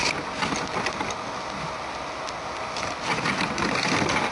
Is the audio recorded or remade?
recorded